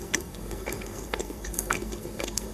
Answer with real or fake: fake